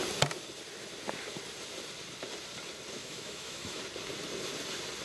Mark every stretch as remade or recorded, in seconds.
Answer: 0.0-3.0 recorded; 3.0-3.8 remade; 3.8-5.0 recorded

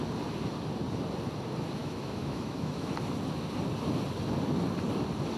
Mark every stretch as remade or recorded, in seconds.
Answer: 0.0-1.8 recorded; 1.8-2.9 remade; 2.9-5.4 recorded

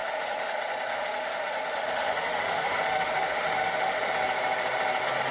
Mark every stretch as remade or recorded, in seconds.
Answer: 0.0-0.5 remade; 0.5-0.9 recorded; 0.9-4.1 remade; 4.1-5.3 recorded

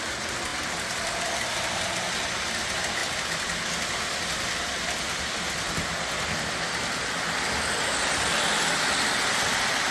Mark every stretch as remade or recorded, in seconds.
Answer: 0.0-9.9 recorded

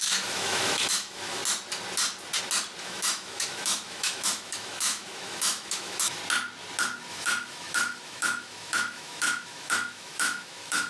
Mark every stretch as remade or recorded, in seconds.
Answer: 0.0-1.4 remade; 1.4-2.8 recorded; 2.8-6.2 remade; 6.2-7.1 recorded; 7.1-10.9 remade

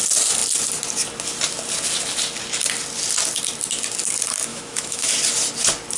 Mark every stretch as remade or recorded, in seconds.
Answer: 0.0-4.5 recorded; 4.5-5.1 remade; 5.1-6.0 recorded

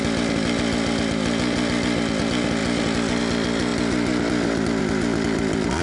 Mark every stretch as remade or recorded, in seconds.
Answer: 0.0-5.8 recorded